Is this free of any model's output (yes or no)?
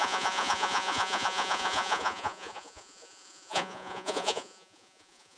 no